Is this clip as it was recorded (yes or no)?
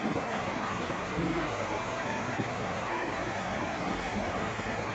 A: no